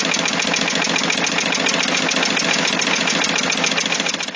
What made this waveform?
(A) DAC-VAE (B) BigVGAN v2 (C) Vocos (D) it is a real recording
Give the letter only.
D